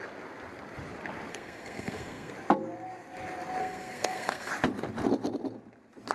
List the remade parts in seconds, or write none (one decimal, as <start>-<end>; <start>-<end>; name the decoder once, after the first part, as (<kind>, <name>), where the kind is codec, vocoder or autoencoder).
1.3-2.3 (codec, SNAC); 3.6-4.5